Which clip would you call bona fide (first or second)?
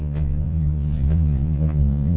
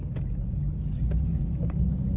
second